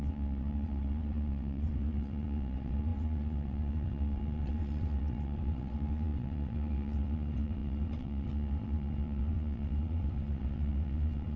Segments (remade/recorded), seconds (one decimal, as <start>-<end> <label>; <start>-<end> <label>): 0.0-11.4 remade